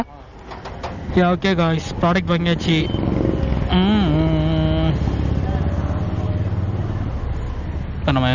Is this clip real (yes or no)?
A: yes